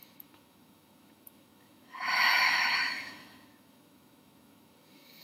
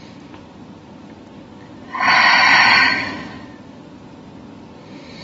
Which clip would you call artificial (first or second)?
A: first